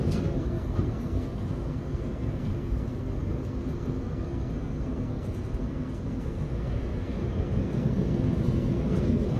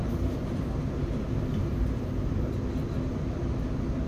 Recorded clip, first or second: second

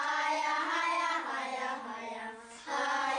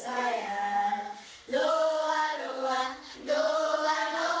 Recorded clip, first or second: first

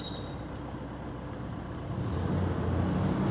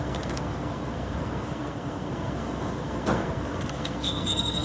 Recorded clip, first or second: first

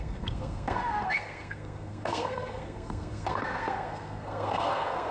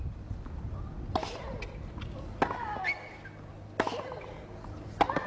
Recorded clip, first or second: second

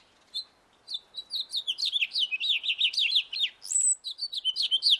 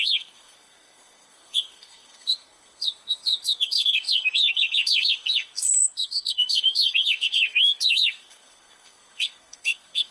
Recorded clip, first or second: first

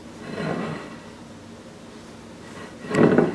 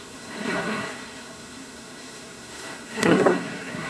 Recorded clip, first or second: first